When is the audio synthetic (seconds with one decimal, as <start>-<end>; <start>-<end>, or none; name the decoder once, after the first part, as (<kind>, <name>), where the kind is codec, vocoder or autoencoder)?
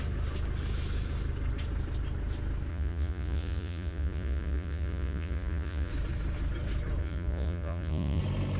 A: 2.7-5.9 (vocoder, Vocos); 7.0-8.2